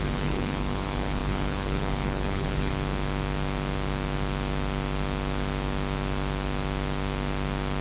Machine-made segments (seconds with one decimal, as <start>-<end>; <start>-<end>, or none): 0.0-2.7

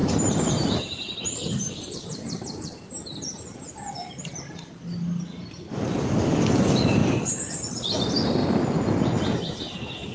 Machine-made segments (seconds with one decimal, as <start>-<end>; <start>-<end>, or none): 0.0-4.3

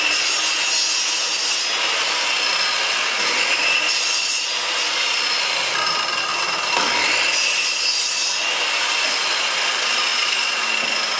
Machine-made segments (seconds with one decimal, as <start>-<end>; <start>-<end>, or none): none